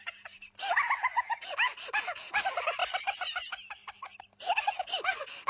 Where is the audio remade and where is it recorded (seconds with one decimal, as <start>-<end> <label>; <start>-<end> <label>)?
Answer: 0.0-2.8 remade; 2.8-4.9 recorded; 4.9-5.5 remade